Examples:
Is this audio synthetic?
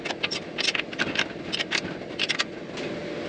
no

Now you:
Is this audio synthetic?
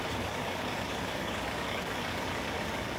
yes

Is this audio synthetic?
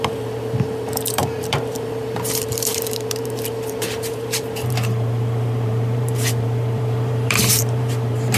yes